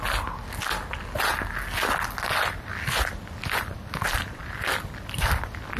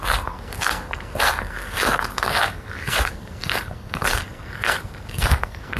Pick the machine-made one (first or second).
second